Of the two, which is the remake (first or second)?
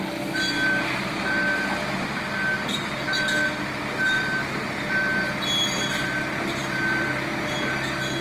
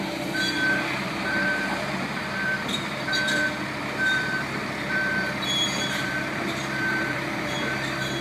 second